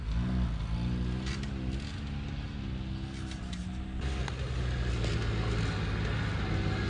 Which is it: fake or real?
real